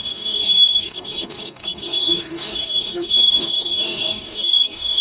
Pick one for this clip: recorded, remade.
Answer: remade